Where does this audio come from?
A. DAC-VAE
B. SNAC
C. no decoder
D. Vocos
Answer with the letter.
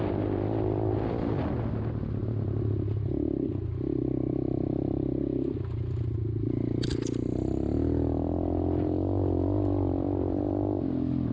C